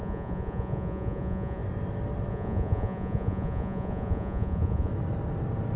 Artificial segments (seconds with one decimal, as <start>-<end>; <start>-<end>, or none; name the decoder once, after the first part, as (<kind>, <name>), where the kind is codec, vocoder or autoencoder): 0.0-1.6 (vocoder, Vocos); 2.3-4.9